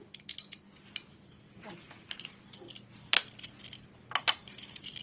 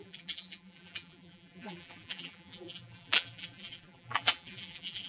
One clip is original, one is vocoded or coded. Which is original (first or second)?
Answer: first